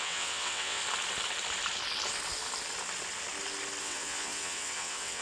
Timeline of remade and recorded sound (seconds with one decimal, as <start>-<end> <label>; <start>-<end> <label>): 0.0-0.8 remade; 0.8-3.8 recorded; 3.8-5.2 remade